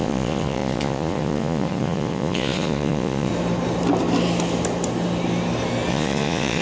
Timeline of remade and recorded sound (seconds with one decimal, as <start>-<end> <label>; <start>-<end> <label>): 0.0-3.3 remade; 3.3-5.9 recorded; 5.9-6.6 remade